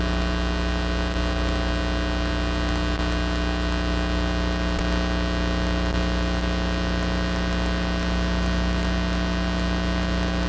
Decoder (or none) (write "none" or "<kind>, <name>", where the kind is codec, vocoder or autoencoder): none